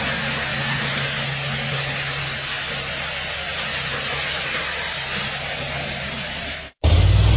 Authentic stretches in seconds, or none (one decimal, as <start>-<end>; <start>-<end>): 0.0-7.4